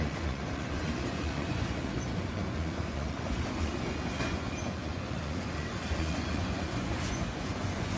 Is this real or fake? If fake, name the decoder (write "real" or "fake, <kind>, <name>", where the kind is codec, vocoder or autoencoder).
fake, vocoder, Vocos